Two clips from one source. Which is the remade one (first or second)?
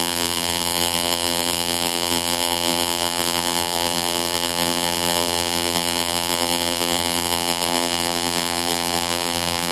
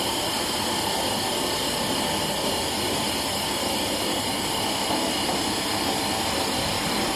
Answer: first